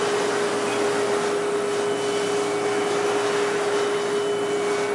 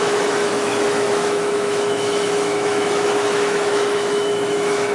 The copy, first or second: second